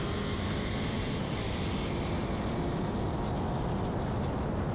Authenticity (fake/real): real